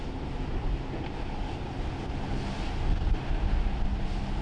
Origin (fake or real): real